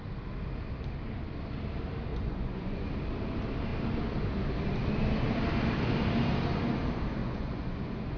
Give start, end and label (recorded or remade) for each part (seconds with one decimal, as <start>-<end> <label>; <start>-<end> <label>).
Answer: 0.0-2.1 recorded; 2.1-2.9 remade; 2.9-7.2 recorded; 7.2-8.2 remade